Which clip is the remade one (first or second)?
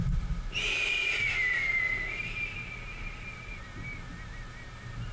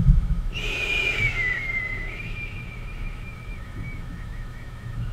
second